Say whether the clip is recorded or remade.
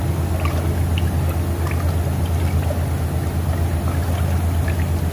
recorded